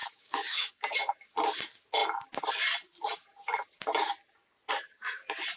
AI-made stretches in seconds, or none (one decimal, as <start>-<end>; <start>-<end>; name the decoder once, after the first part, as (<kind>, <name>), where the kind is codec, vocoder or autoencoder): 0.0-0.7 (autoencoder, DAC-VAE)